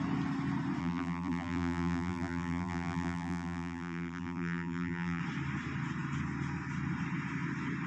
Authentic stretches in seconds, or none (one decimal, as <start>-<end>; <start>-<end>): 0.0-0.8; 5.2-7.9